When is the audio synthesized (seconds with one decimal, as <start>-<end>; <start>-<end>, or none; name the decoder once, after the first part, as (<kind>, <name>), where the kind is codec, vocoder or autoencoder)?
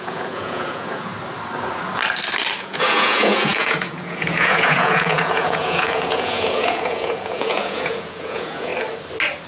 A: 0.0-1.1 (vocoder, Vocos); 2.6-8.7